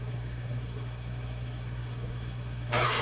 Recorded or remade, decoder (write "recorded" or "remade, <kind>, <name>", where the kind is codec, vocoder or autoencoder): remade, codec, SNAC